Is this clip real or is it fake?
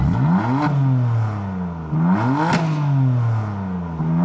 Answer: real